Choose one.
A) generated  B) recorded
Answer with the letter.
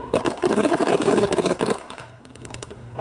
A